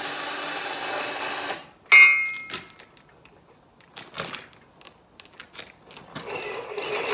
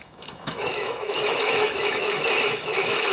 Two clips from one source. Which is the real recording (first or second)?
first